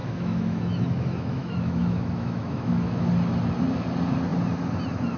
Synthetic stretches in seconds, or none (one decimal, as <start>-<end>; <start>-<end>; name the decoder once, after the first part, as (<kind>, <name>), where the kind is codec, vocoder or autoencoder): 0.0-3.1 (autoencoder, DAC-VAE)